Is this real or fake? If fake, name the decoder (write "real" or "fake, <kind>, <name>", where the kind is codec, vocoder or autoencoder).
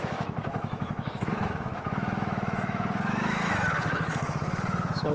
fake, autoencoder, DAC-VAE